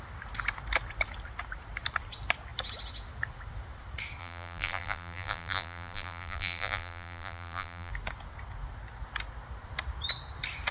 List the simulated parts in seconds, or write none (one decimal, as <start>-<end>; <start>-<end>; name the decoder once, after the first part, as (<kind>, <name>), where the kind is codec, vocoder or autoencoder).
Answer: 4.2-7.9 (vocoder, BigVGAN v2)